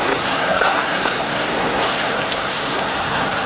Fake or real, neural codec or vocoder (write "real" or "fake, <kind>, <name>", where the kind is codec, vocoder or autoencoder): fake, codec, SNAC